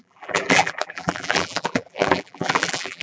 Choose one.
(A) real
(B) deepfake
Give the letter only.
B